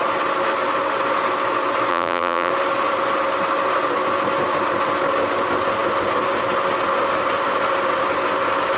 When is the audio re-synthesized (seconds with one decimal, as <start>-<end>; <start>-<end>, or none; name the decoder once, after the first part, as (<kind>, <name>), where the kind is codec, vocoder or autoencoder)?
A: 1.9-2.5 (vocoder, BigVGAN v2)